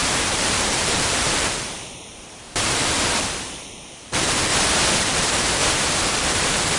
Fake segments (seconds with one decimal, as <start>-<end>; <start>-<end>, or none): 0.0-4.5; 5.0-5.6; 6.1-6.8